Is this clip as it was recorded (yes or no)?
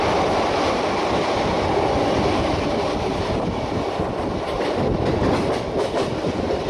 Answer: yes